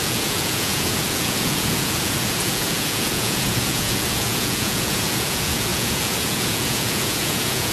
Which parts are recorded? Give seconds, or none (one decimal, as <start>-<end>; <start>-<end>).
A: none